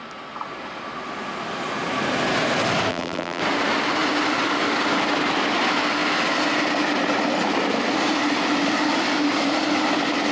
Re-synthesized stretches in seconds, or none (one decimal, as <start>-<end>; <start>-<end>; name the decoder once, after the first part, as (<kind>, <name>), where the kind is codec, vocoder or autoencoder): 2.9-3.4 (vocoder, BigVGAN v2)